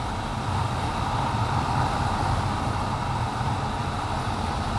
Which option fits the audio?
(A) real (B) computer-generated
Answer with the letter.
A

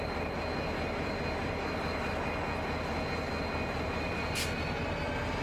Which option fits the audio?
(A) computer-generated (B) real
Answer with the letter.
B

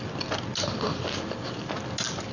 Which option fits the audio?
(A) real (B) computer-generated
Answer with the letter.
A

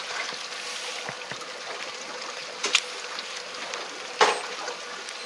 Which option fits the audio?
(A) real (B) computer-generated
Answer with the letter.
A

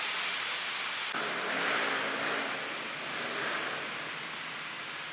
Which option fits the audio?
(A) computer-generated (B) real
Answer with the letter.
B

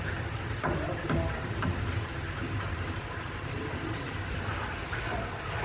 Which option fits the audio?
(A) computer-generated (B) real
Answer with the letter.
A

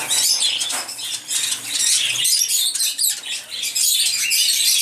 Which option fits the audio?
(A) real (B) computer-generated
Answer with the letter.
A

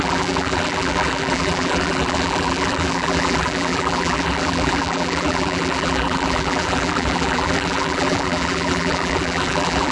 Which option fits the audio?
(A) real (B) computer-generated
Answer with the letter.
B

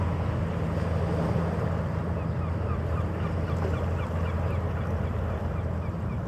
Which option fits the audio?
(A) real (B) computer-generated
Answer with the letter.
A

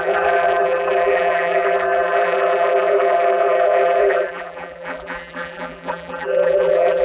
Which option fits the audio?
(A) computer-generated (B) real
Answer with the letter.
A